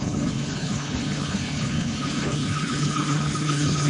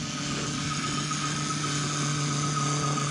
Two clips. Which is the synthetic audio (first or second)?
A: first